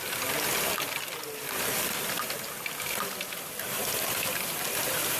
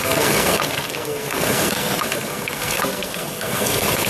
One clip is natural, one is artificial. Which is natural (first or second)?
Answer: first